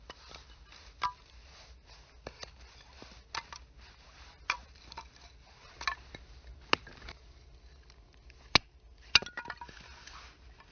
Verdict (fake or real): real